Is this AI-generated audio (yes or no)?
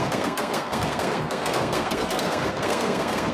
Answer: yes